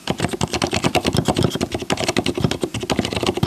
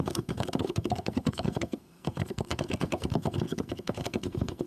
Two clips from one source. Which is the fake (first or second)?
second